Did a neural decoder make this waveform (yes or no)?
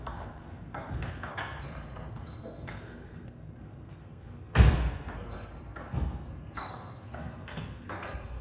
yes